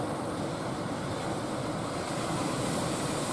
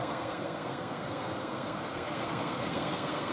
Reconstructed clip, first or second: second